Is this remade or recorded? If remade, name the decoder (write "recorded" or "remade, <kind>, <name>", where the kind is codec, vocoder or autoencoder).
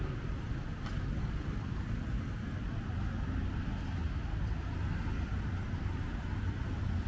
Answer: recorded